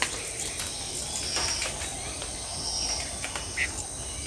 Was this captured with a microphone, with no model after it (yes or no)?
yes